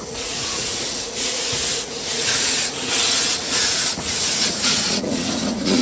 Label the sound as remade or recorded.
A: remade